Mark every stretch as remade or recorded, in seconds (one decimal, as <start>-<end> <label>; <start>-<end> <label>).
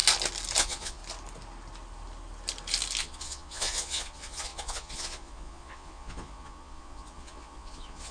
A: 0.0-0.6 recorded; 0.6-1.0 remade; 1.0-3.0 recorded; 3.0-8.1 remade